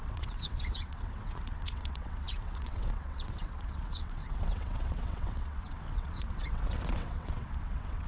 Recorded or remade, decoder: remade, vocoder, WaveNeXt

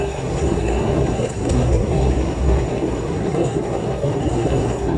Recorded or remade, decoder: remade, codec, SNAC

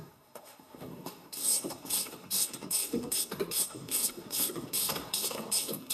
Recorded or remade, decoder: remade, codec, SNAC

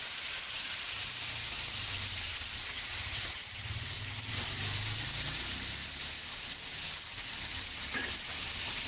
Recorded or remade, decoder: remade, vocoder, BigVGAN v2